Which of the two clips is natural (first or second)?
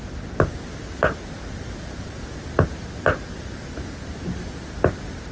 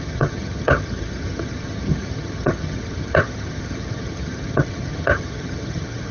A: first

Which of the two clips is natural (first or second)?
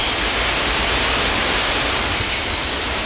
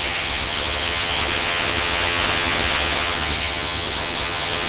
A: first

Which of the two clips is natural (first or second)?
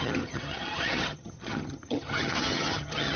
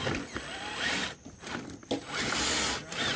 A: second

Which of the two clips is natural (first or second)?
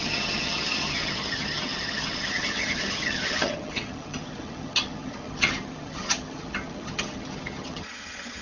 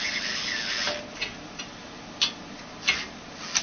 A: second